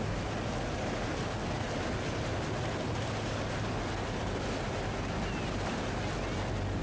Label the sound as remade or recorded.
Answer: recorded